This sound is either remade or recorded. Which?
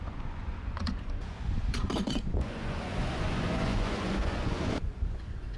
remade